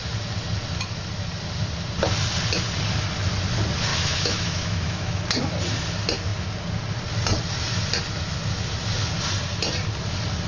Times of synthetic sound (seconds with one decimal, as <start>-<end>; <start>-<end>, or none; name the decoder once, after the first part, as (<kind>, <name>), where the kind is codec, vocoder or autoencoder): 3.9-5.2 (autoencoder, DAC-VAE)